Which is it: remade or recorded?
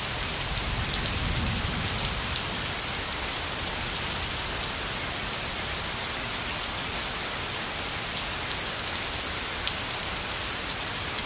recorded